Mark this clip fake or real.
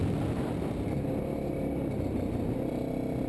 real